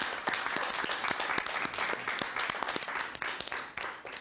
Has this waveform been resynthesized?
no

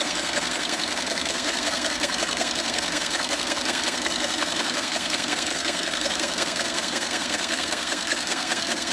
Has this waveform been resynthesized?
yes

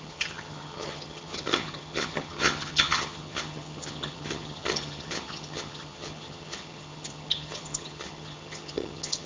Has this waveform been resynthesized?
yes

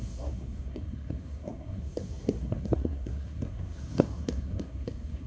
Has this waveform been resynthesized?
yes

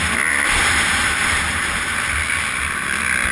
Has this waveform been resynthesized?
no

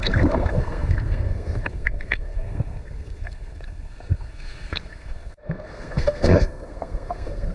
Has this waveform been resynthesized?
yes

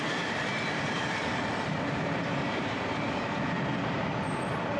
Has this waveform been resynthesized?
no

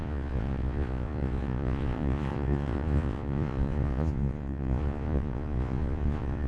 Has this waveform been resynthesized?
yes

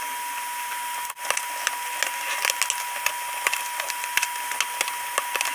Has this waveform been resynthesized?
no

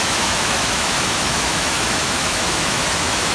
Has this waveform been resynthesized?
yes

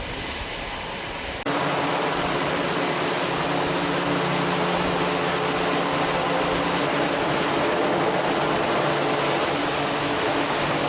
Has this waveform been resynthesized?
no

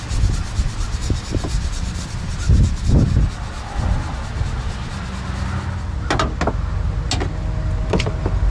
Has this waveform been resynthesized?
no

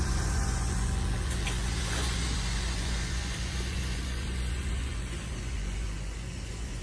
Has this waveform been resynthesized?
yes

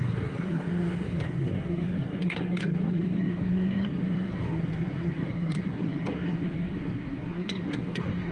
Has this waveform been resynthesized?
yes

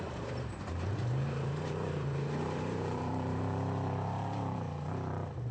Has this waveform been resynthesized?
yes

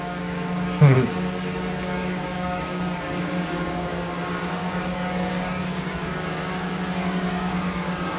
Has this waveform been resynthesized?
yes